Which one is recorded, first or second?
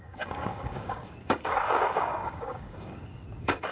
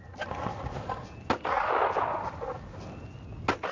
second